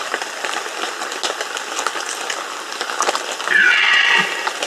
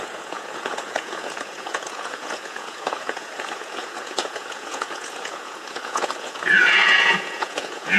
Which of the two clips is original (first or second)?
first